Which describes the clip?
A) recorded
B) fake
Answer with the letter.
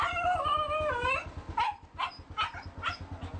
A